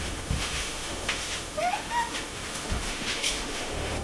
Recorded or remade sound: remade